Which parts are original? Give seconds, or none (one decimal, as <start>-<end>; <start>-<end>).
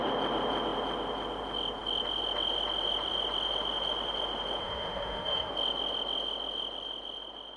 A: 0.0-4.6; 5.5-7.6